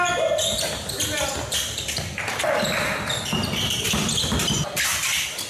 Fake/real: real